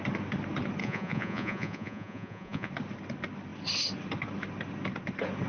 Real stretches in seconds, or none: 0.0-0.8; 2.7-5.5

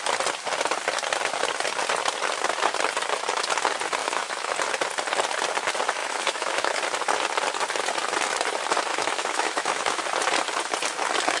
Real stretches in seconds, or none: 0.0-4.0; 4.5-6.0; 6.8-8.9; 10.0-11.4

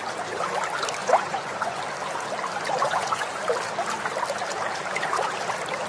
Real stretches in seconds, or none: 0.0-1.0; 1.8-2.8; 3.4-5.9

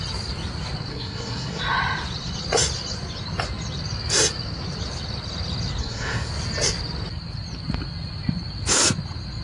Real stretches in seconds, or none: 0.0-0.9; 1.6-5.8; 6.3-9.4

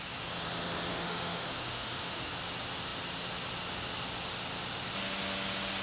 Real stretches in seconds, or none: 0.0-0.9; 2.3-5.8

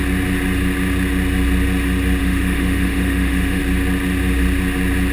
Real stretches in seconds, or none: 0.0-2.2; 3.6-5.1